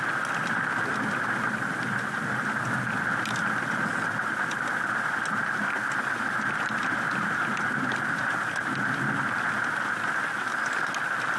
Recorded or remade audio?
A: recorded